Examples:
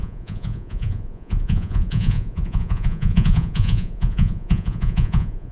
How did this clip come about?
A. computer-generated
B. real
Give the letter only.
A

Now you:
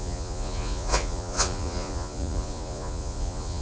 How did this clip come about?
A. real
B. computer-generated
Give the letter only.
B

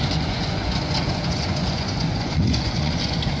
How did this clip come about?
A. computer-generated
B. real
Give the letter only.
A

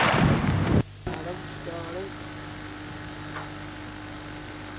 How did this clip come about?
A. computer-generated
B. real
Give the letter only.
B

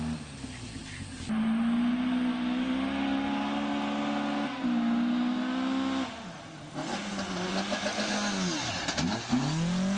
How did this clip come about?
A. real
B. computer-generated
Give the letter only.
A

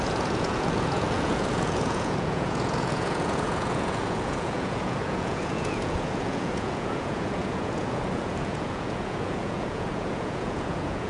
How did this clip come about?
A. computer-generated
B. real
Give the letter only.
A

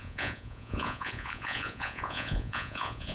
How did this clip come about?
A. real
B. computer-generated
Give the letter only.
B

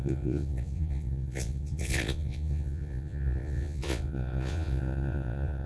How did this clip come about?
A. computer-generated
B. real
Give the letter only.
A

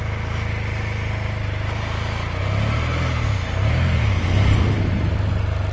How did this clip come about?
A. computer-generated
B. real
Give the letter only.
B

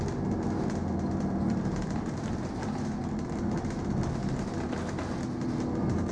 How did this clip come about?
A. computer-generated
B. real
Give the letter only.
B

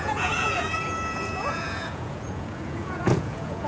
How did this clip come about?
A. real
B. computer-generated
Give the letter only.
B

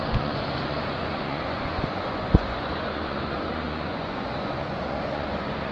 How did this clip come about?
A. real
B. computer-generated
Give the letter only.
B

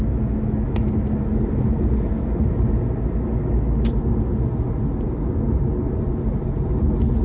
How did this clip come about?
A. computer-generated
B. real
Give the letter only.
B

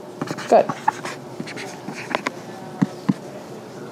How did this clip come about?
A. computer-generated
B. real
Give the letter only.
B